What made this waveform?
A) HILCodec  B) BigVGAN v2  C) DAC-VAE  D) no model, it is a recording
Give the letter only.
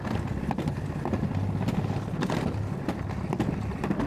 D